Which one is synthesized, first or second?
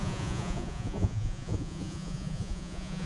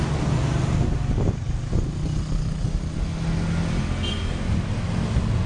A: first